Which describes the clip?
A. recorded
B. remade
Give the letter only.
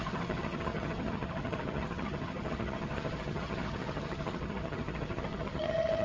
B